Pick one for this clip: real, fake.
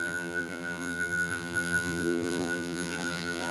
fake